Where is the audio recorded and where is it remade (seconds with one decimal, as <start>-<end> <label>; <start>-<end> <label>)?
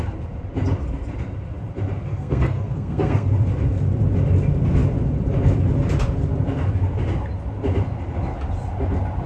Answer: 0.0-2.1 recorded; 2.1-3.3 remade; 3.3-9.3 recorded